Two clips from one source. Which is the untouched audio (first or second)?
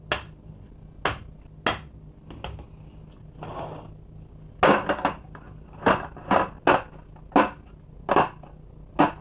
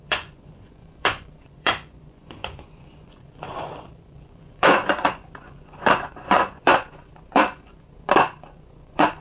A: first